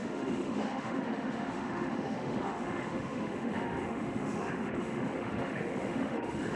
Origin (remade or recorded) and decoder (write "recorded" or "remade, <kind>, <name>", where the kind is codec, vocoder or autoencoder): remade, autoencoder, DAC-VAE